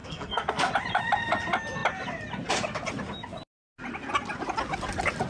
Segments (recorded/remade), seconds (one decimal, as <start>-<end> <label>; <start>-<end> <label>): 0.0-0.7 remade; 0.7-5.3 recorded